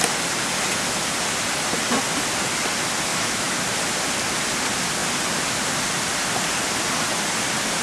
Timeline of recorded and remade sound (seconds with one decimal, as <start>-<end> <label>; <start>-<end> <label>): 0.0-3.1 recorded; 3.1-3.6 remade; 3.6-7.8 recorded